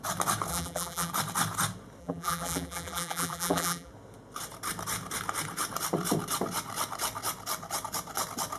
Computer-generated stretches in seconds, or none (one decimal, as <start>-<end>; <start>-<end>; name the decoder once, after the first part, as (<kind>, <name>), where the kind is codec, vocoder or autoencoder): 0.5-1.1 (vocoder, BigVGAN v2); 2.0-3.9